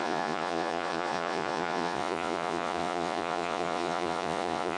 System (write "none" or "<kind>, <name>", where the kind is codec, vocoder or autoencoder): vocoder, Vocos